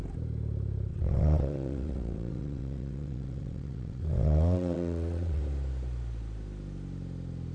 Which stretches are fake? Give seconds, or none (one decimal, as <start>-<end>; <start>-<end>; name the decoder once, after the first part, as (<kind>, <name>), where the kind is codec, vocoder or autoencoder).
0.9-5.4 (vocoder, WaveNeXt)